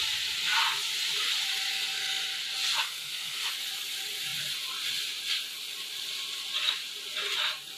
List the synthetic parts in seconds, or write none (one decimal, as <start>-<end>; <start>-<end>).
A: 1.7-2.4; 2.8-3.5